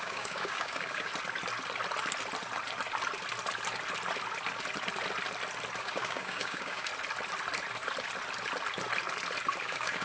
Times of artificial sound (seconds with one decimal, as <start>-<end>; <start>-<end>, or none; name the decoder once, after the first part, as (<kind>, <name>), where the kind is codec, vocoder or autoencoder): 0.0-1.1 (codec, DAC); 5.8-6.9; 9.6-10.0